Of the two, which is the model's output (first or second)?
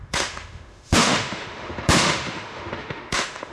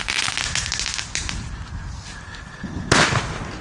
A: first